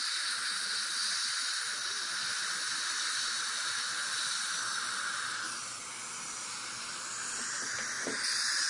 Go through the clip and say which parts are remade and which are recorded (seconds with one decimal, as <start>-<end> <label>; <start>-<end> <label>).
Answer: 0.0-8.7 recorded